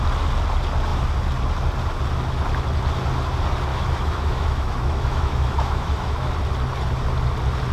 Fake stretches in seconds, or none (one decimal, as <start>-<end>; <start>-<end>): 3.7-6.3